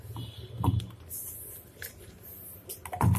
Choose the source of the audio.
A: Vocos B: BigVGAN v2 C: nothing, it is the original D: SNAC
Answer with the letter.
C